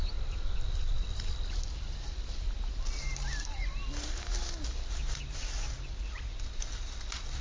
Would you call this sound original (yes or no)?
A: yes